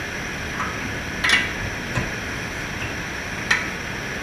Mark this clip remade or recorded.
recorded